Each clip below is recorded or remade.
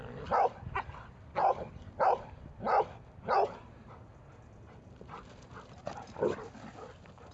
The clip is recorded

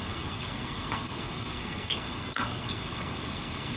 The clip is remade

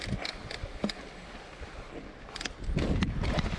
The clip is recorded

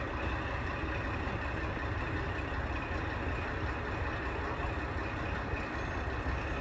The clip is recorded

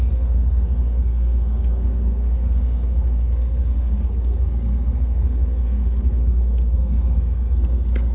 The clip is remade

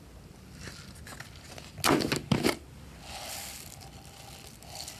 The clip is recorded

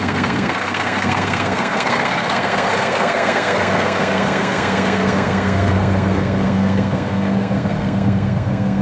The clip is remade